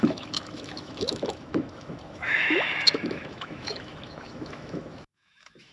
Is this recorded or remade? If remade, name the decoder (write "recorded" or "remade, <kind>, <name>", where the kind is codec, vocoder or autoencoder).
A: remade, autoencoder, DAC-VAE